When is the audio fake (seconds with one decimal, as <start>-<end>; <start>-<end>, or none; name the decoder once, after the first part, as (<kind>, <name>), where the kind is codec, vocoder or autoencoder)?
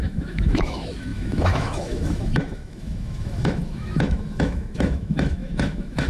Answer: 0.0-6.1 (autoencoder, DAC-VAE)